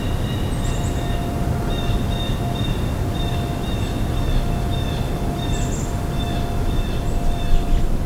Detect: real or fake real